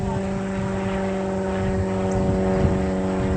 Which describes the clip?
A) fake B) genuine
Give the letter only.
B